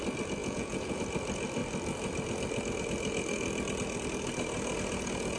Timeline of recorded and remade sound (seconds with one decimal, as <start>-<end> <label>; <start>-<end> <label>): 0.0-0.4 recorded; 0.4-1.0 remade; 1.0-5.4 recorded